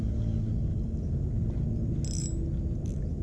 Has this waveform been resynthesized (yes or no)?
no